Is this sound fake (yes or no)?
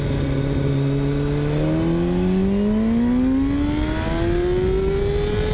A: no